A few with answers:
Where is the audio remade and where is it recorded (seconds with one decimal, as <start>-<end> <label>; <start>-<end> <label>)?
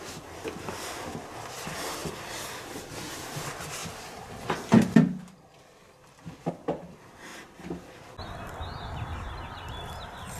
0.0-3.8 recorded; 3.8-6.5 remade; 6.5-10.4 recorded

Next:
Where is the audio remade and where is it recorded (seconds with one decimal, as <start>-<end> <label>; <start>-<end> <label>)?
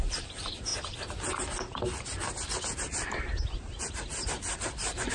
0.0-5.1 recorded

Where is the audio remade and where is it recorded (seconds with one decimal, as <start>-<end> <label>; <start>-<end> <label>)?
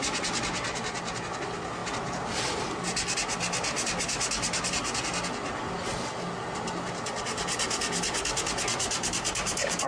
0.0-9.9 recorded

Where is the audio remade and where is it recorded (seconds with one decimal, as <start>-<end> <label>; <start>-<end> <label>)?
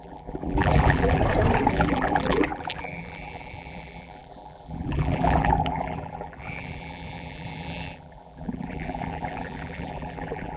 0.0-1.2 remade; 1.2-1.7 recorded; 1.7-10.6 remade